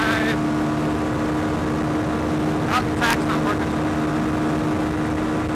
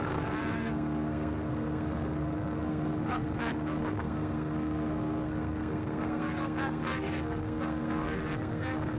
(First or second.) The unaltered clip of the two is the first